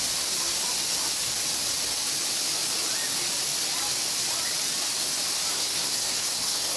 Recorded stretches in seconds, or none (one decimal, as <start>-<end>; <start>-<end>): 0.0-5.5